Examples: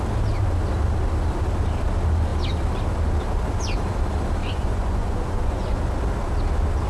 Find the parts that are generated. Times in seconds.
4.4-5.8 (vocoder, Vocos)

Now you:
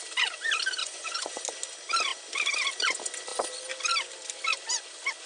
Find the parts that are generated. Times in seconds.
0.8-1.4 (vocoder, Vocos)

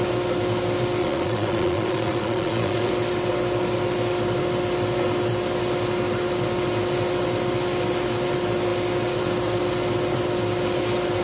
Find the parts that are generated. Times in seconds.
1.0-2.9 (vocoder, Vocos)

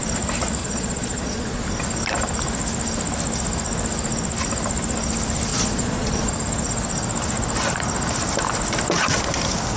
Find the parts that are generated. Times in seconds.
0.6-1.6 (vocoder, Vocos); 5.5-6.3

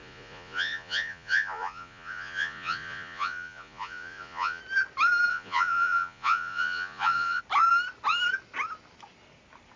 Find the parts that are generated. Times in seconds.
0.0-4.6 (vocoder, Vocos); 5.3-7.4